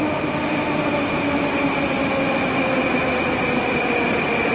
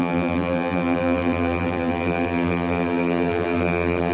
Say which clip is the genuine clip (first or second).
first